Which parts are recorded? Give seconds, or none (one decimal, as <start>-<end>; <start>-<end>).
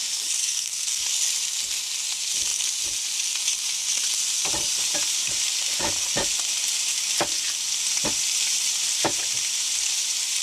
0.0-0.4; 1.0-10.4